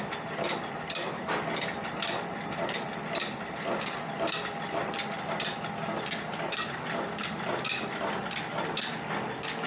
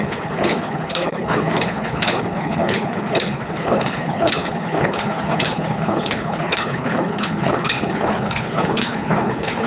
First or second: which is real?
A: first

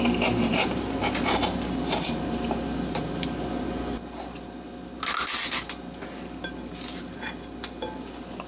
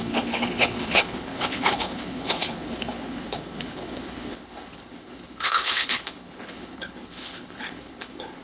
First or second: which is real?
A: first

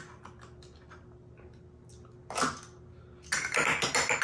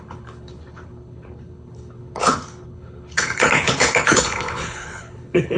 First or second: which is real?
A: first